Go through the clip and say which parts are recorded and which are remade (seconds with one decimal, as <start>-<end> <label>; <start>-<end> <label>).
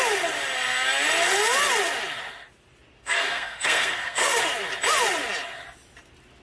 0.0-3.0 recorded; 3.0-4.4 remade; 4.4-6.4 recorded